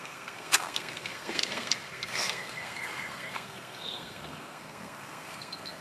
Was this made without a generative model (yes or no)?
no